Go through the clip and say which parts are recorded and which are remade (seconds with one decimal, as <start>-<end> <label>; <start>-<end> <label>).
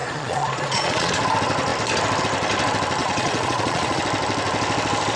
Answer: 0.0-1.1 remade; 1.1-3.0 recorded; 3.0-4.0 remade; 4.0-5.2 recorded